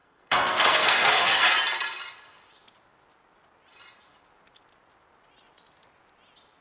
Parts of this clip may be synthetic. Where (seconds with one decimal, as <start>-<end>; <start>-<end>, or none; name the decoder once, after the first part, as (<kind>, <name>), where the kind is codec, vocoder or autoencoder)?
0.0-1.5 (codec, SNAC)